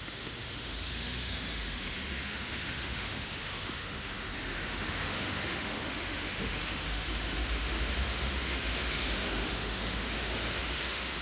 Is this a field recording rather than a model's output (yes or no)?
no